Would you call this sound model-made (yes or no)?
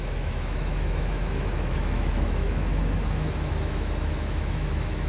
yes